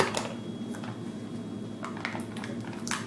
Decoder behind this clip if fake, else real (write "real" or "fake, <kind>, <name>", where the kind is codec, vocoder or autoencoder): real